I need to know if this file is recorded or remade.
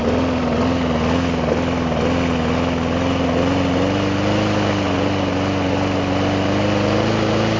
recorded